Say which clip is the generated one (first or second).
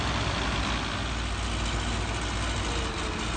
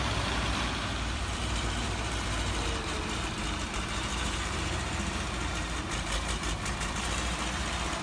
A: second